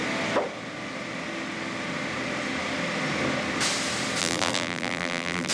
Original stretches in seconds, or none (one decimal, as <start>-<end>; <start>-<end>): 0.0-4.2